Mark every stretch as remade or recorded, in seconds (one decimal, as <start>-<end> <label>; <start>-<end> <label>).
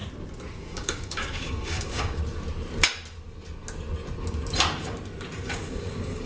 0.0-0.6 recorded; 0.6-2.2 remade; 2.2-5.5 recorded; 5.5-6.3 remade